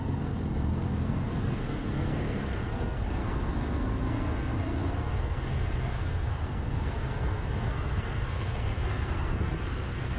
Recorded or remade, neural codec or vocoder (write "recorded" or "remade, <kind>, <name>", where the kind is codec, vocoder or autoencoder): remade, codec, SNAC